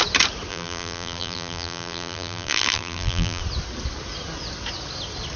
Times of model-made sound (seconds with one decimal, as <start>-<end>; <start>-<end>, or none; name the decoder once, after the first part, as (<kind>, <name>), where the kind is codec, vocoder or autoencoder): 0.5-3.4 (vocoder, BigVGAN v2)